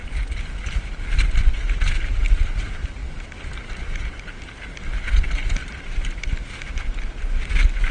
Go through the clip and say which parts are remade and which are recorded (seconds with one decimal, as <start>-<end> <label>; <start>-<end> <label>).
0.0-2.1 recorded; 2.1-2.6 remade; 2.6-5.6 recorded; 5.6-6.5 remade; 6.5-7.9 recorded